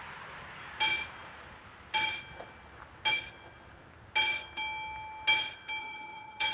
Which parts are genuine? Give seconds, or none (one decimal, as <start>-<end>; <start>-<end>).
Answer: 0.0-5.8